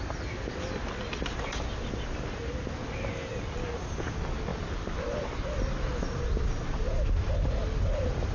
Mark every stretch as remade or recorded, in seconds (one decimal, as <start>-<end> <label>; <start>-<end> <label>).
0.0-8.3 recorded